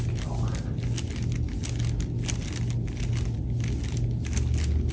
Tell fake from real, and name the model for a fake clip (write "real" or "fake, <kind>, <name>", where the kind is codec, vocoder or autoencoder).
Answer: real